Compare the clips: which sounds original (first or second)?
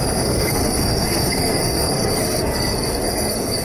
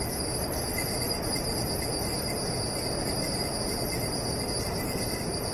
second